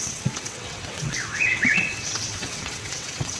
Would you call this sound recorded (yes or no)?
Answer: no